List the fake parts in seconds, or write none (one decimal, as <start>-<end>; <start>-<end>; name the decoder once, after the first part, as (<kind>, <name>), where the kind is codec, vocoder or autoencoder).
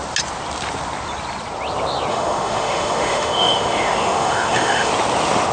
2.1-4.9 (autoencoder, DAC-VAE)